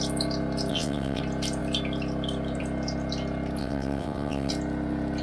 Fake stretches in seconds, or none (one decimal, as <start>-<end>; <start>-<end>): 0.7-1.2; 3.6-4.5